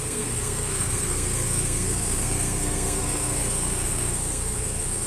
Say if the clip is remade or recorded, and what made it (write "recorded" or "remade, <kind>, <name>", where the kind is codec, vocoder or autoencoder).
remade, codec, SNAC